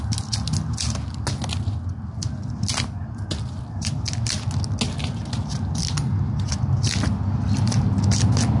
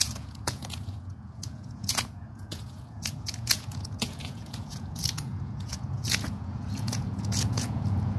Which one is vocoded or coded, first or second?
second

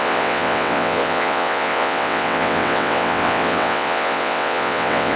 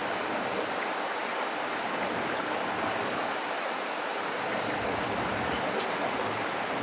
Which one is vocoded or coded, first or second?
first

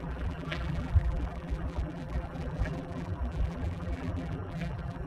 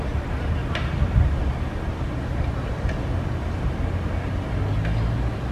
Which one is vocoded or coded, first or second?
first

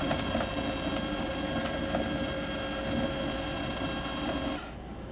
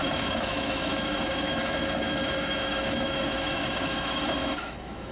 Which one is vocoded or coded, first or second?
second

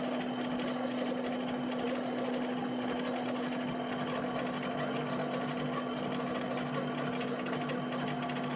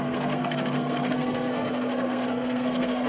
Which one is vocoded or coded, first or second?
second